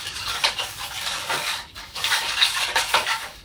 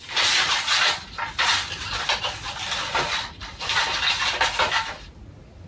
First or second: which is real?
second